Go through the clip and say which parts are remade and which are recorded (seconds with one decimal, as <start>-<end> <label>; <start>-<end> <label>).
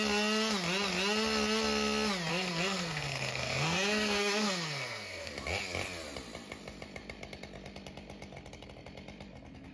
0.0-2.3 recorded; 2.3-5.3 remade; 5.3-9.7 recorded